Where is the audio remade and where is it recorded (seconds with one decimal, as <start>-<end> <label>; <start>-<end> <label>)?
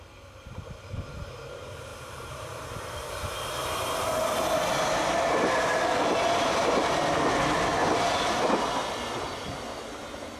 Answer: 0.0-1.9 recorded; 1.9-3.0 remade; 3.0-10.4 recorded